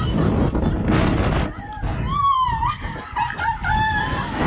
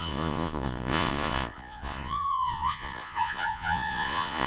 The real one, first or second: first